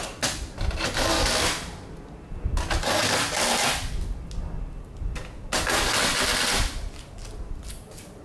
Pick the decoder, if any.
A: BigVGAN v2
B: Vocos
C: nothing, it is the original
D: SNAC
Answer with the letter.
C